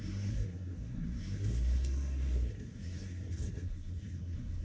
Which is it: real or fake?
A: fake